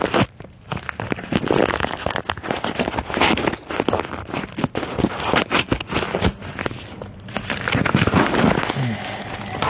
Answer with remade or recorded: recorded